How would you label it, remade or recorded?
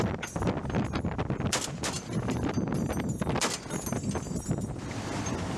recorded